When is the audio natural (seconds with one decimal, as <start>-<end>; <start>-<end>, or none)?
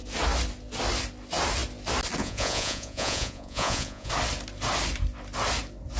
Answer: 0.0-2.2; 4.1-6.0